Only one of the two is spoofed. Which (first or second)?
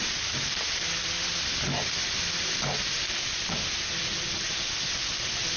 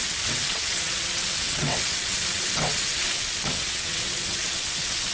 second